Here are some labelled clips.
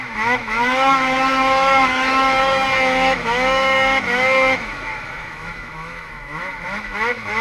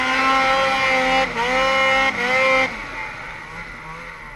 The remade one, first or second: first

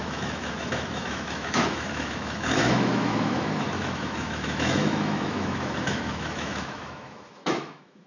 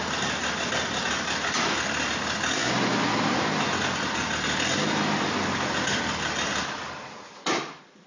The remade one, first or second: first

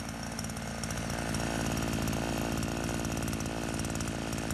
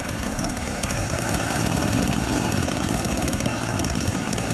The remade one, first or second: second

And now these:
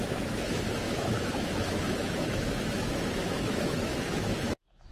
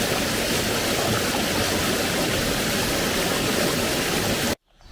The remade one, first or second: first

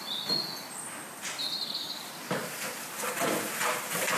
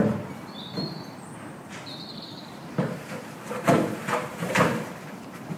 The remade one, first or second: second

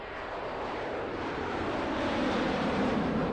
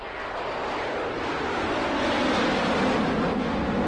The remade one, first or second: first